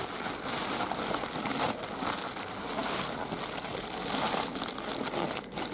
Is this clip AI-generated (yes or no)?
no